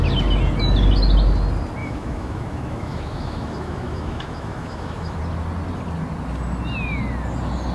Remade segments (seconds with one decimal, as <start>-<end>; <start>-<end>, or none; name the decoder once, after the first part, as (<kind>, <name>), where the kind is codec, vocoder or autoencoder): 1.8-5.2 (autoencoder, DAC-VAE)